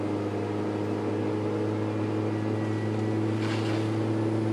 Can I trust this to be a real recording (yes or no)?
yes